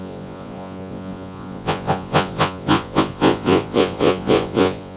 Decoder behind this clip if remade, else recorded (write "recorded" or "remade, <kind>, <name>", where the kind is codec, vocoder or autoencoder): remade, vocoder, Vocos